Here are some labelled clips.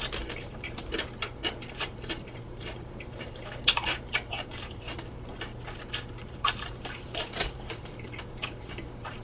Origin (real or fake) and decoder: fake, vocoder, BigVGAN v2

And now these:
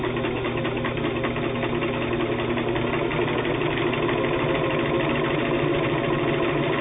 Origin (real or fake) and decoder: real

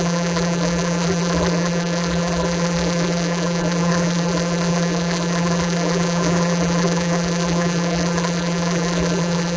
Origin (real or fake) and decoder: fake, vocoder, BigVGAN v2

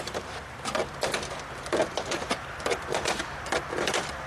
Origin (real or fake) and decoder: fake, vocoder, BigVGAN v2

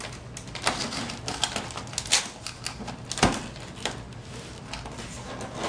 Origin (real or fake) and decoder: real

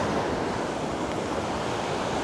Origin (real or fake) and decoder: real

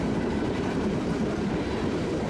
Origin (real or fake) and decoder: fake, vocoder, BigVGAN v2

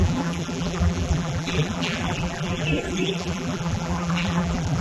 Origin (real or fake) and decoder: fake, vocoder, BigVGAN v2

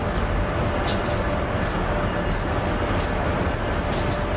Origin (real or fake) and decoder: real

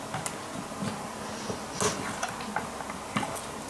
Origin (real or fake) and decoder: real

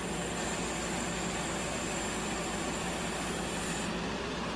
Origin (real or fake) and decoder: real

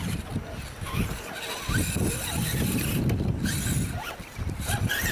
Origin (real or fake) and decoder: real